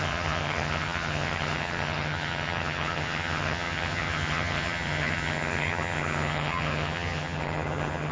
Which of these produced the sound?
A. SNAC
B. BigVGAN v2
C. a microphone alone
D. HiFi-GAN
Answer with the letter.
D